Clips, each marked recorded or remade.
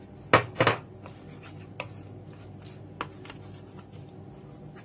recorded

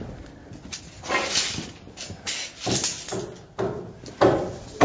recorded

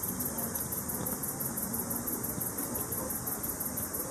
recorded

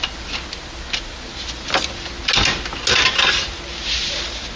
recorded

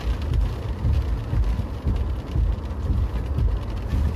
recorded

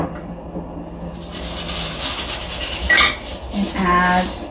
recorded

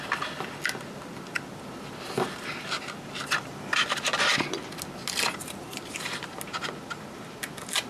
recorded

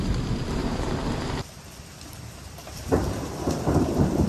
remade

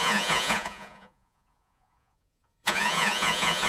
remade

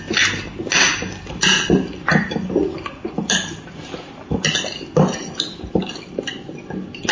recorded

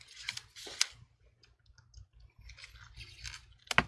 recorded